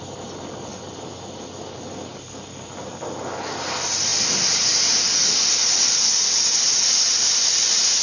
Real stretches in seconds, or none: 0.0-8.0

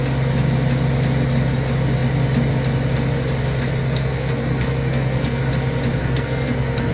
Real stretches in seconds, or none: 0.0-3.8; 5.4-6.0

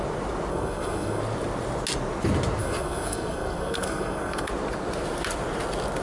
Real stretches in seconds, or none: 0.0-0.5; 1.2-2.6; 4.5-6.0

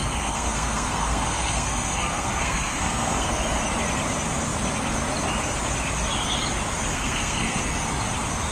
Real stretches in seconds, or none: 3.3-6.9; 7.6-8.5

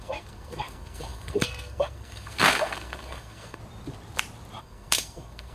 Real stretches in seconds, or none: 3.6-4.6

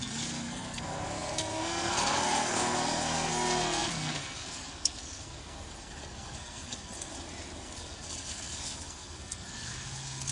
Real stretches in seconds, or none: 7.1-7.6